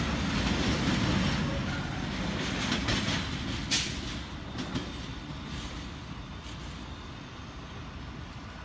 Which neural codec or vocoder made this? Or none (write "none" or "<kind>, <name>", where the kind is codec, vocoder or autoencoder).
none